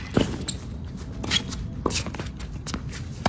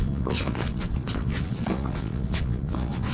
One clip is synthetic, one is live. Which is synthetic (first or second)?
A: second